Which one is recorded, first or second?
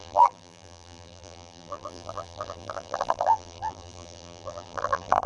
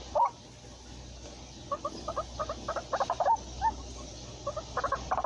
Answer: second